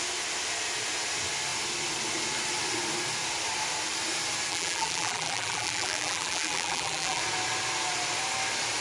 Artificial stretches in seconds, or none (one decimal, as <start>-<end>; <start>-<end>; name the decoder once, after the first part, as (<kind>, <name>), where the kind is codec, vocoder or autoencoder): 4.5-7.2 (vocoder, BigVGAN v2)